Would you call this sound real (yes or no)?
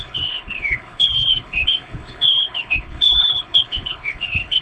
no